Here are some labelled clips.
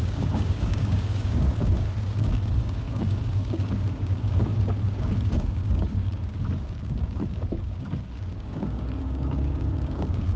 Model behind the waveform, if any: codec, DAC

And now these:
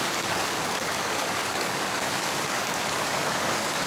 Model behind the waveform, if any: codec, DAC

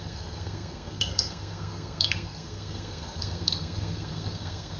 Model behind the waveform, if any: codec, SNAC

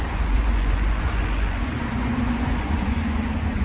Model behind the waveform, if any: vocoder, Vocos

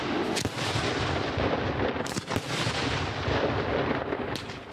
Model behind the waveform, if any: none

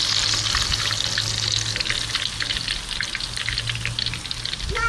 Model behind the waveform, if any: none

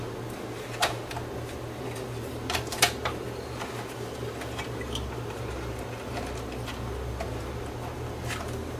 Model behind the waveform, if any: none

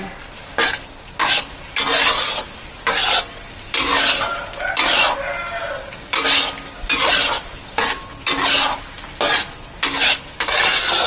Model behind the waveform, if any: none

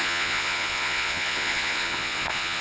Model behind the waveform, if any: vocoder, Vocos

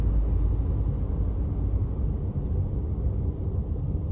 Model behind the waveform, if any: none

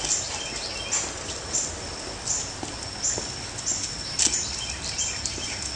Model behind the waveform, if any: none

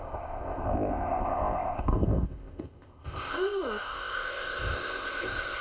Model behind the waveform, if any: codec, ZipCodec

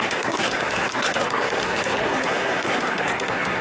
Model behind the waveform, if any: codec, SNAC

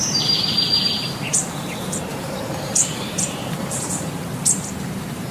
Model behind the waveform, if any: vocoder, BigVGAN v2